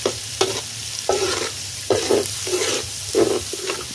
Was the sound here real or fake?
real